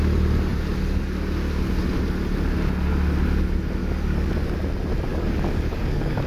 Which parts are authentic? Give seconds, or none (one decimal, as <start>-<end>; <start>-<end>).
0.0-3.8; 4.3-5.1